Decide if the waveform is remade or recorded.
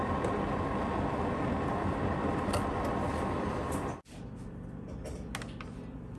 recorded